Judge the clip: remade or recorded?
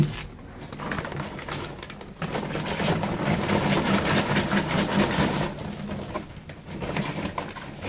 recorded